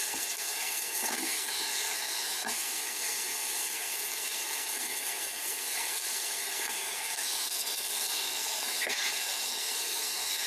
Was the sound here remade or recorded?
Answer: remade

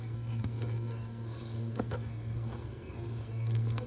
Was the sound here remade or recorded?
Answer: remade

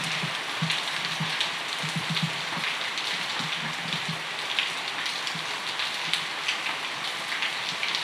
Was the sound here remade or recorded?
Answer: recorded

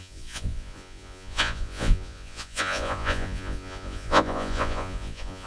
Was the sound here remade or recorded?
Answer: remade